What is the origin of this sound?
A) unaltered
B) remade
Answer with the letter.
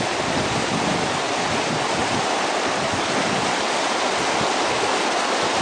A